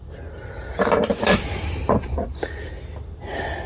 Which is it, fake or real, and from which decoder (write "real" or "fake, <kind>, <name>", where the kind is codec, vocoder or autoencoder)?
real